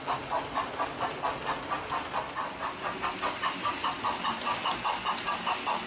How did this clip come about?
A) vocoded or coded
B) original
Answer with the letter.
B